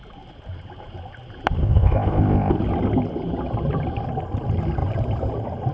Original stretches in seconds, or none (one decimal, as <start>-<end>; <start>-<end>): 0.0-1.6; 2.6-5.7